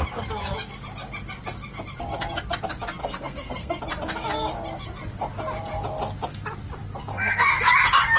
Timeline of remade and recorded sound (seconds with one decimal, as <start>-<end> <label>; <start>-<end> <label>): 0.0-3.0 recorded; 3.0-3.8 remade; 3.8-7.1 recorded; 7.1-7.6 remade; 7.6-8.2 recorded